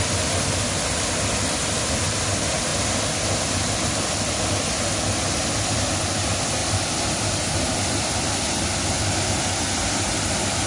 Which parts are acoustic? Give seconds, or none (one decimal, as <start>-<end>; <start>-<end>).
0.0-10.7